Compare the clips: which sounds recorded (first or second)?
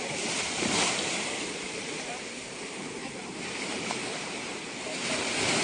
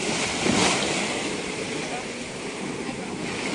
second